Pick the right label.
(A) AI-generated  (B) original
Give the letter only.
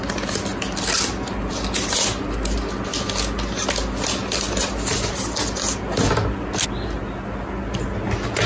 B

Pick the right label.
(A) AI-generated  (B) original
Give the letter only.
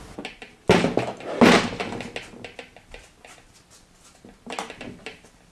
B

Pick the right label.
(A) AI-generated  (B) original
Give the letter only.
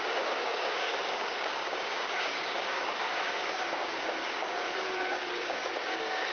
A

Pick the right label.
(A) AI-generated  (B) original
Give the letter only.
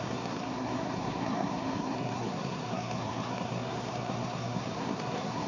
A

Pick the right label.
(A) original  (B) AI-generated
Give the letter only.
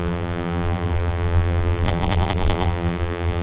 B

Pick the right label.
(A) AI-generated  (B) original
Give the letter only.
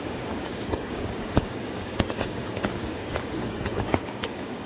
A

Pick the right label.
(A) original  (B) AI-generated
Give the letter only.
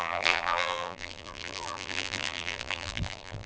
B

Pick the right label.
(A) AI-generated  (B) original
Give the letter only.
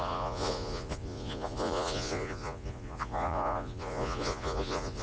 A